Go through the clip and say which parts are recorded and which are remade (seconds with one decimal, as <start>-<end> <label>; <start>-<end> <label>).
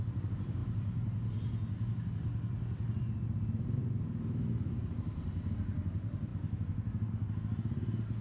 0.0-8.2 recorded